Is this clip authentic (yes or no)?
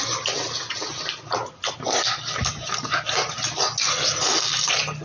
yes